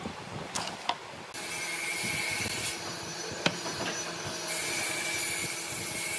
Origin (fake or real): real